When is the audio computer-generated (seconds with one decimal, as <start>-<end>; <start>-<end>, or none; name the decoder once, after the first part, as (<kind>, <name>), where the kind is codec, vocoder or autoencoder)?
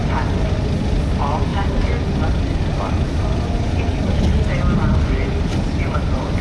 none